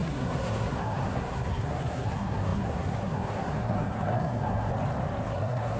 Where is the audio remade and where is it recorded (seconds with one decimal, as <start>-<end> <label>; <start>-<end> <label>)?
0.0-4.7 remade; 4.7-5.3 recorded; 5.3-5.8 remade